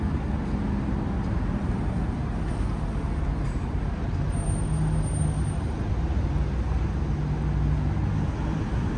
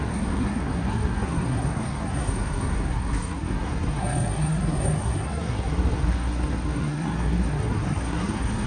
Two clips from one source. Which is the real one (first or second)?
first